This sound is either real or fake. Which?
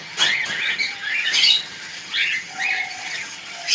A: fake